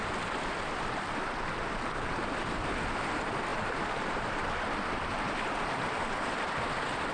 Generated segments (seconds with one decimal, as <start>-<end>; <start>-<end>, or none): none

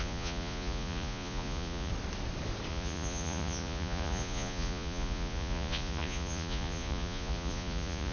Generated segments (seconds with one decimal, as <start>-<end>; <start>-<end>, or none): 0.0-1.9; 2.7-8.1

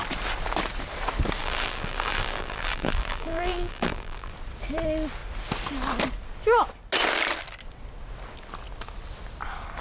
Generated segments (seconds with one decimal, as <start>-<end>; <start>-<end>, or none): 1.4-4.3

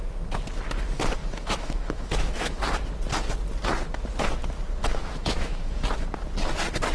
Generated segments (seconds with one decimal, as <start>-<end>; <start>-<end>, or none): 1.2-2.6; 4.8-5.8

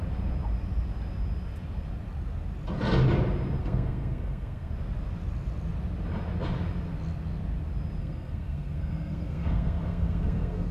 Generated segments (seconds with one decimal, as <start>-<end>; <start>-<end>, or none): 3.6-4.7; 8.0-10.7

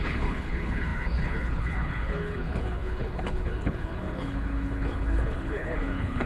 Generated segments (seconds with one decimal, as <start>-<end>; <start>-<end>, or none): 0.0-6.3

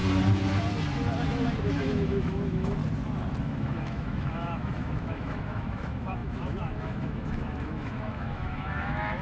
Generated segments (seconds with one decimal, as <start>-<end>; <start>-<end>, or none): 1.6-2.8; 3.4-9.2